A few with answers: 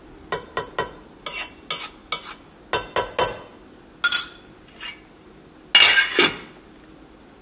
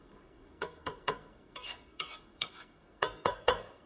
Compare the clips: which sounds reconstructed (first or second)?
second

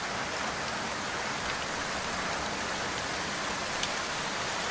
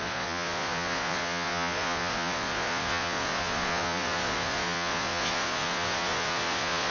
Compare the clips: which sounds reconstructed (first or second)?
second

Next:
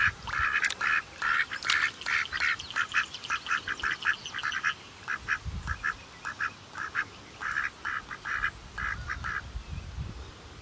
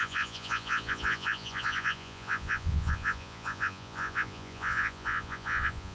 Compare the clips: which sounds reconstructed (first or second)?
second